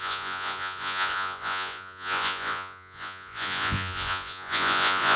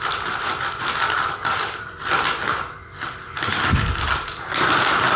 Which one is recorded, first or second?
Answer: second